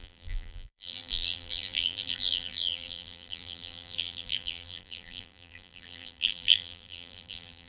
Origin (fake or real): fake